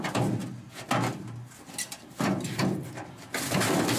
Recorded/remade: recorded